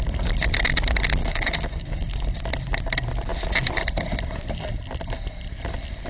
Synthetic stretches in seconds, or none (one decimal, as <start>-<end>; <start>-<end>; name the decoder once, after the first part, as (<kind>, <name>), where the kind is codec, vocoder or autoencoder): 1.2-2.0 (codec, DAC)